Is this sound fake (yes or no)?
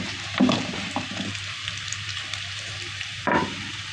yes